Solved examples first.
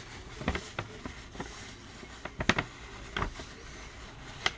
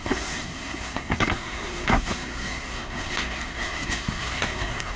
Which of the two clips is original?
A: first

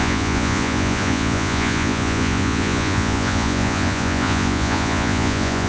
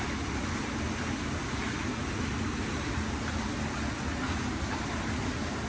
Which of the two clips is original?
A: second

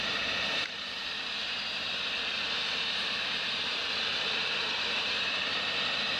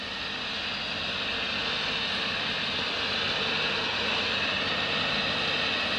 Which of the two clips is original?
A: second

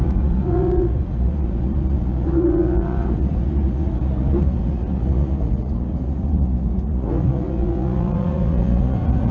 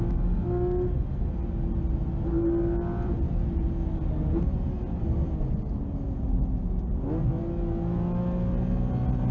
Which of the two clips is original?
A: second